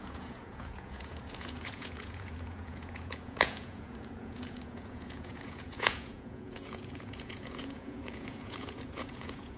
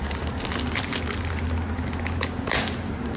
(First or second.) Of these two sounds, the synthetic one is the first